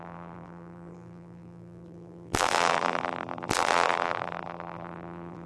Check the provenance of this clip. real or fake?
fake